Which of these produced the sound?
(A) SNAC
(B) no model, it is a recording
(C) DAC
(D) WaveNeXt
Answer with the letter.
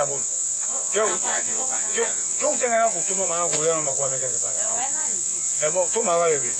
D